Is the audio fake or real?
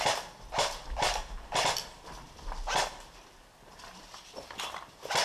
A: real